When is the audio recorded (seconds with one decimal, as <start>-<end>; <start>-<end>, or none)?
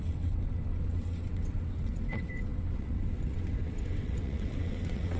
none